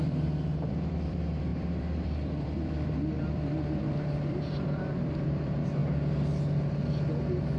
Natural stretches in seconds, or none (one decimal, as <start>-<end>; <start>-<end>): 5.8-7.6